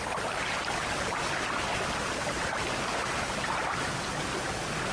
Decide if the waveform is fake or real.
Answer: real